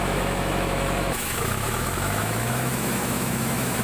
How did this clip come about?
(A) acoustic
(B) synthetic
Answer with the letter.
B